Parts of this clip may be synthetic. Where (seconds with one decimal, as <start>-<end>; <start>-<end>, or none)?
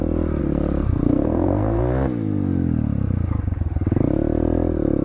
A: 0.4-1.8